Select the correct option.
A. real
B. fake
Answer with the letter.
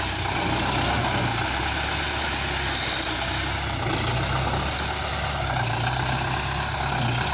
A